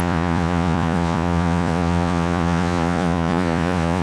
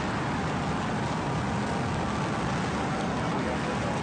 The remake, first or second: first